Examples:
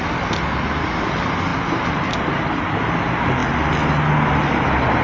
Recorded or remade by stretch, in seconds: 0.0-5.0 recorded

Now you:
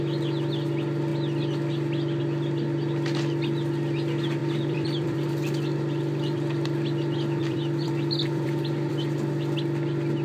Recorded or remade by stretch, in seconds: 0.0-4.4 recorded; 4.4-8.9 remade; 8.9-10.2 recorded

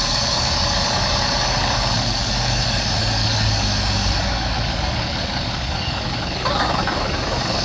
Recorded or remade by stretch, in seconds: 0.0-7.6 remade

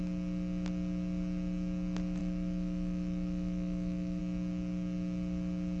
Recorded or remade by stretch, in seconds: 0.0-2.2 recorded; 2.2-4.2 remade; 4.2-5.8 recorded

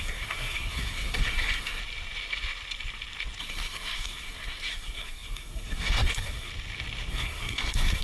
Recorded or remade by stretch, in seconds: 0.0-1.8 remade; 1.8-3.4 recorded; 3.4-6.5 remade; 6.5-7.1 recorded; 7.1-8.0 remade

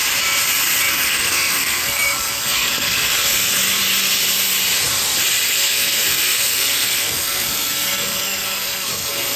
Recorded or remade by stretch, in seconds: 0.0-0.9 recorded; 0.9-3.5 remade; 3.5-5.5 recorded; 5.5-9.4 remade

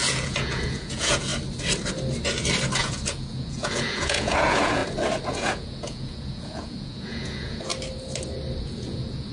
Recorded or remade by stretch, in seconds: 0.0-1.3 remade; 1.3-2.8 recorded; 2.8-4.8 remade; 4.8-5.3 recorded; 5.3-7.7 remade; 7.7-8.6 recorded; 8.6-9.3 remade

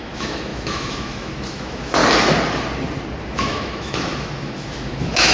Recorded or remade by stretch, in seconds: 0.0-2.0 remade; 2.0-3.2 recorded; 3.2-5.3 remade